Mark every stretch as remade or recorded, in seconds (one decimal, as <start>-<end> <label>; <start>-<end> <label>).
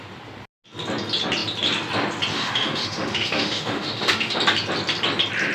0.0-2.3 recorded; 2.3-4.4 remade; 4.4-5.5 recorded